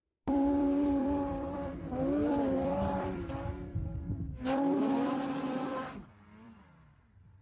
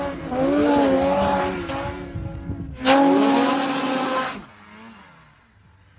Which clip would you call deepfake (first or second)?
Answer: first